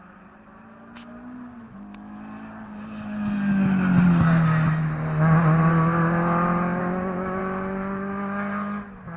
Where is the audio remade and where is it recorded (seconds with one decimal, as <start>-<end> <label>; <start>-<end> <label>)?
0.0-6.8 recorded; 6.8-7.4 remade; 7.4-9.2 recorded

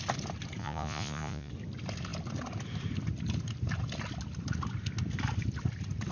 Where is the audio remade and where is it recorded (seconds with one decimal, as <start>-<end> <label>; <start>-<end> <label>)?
0.0-0.6 recorded; 0.6-1.5 remade; 1.5-6.1 recorded